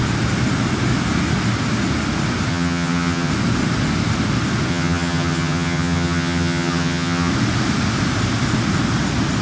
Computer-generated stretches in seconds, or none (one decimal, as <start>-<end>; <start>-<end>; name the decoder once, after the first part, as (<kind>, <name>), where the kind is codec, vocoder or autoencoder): 2.5-3.3 (vocoder, HiFi-GAN); 4.7-7.3